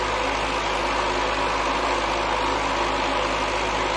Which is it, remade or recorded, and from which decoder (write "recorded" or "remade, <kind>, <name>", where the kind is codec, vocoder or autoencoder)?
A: recorded